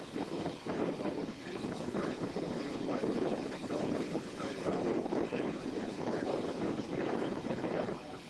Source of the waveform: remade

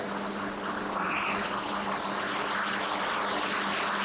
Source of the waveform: recorded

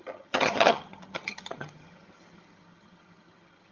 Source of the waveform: remade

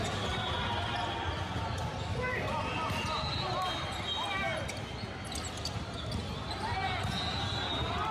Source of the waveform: recorded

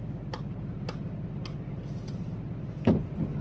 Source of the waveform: recorded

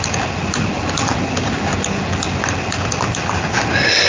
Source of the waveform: recorded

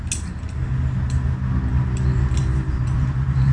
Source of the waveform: recorded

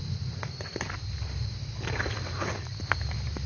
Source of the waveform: recorded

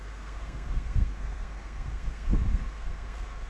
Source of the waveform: remade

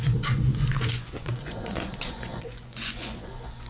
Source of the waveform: remade